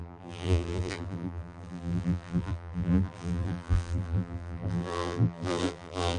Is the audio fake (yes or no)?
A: yes